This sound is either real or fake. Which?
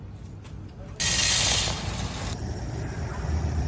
real